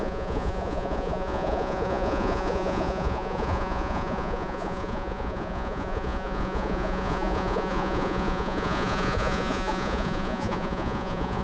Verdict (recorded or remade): remade